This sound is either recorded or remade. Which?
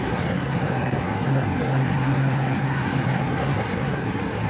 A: remade